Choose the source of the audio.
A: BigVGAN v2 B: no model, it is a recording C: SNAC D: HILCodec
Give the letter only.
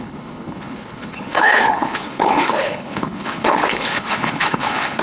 D